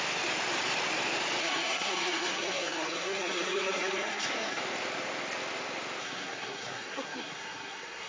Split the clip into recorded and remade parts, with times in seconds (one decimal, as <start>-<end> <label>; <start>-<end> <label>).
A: 0.0-1.4 recorded; 1.4-4.6 remade; 4.6-6.0 recorded; 6.0-8.1 remade